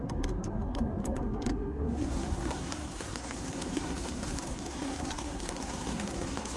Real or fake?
fake